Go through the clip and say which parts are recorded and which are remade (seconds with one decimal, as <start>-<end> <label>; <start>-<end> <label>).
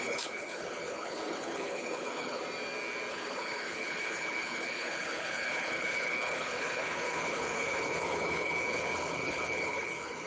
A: 0.0-2.4 remade; 2.4-3.1 recorded; 3.1-10.3 remade